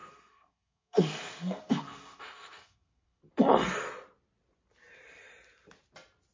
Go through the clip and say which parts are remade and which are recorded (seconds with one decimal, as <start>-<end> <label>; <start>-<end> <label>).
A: 0.0-3.2 remade; 3.2-6.3 recorded

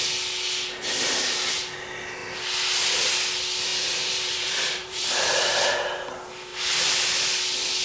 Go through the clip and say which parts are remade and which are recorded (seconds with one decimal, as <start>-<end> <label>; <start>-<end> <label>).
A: 0.0-3.7 recorded; 3.7-5.1 remade; 5.1-7.8 recorded

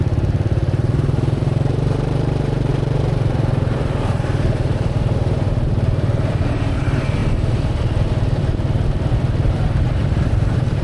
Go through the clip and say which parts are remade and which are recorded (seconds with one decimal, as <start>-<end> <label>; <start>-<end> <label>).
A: 0.0-7.2 remade; 7.2-9.1 recorded; 9.1-10.8 remade

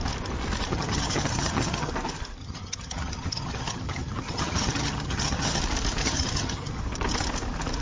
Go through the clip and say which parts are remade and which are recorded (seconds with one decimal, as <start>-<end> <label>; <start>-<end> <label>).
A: 0.0-0.7 recorded; 0.7-1.9 remade; 1.9-2.4 recorded; 2.4-5.6 remade; 5.6-6.0 recorded; 6.0-6.8 remade; 6.8-7.8 recorded

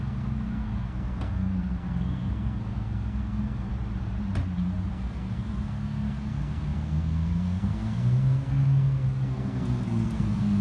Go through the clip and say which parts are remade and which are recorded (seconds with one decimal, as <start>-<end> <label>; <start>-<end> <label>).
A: 0.0-3.7 remade; 3.7-4.9 recorded; 4.9-10.6 remade